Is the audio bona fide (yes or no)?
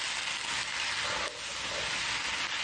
yes